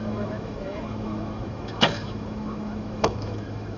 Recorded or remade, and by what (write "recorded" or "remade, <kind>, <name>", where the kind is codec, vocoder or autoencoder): remade, autoencoder, DAC-VAE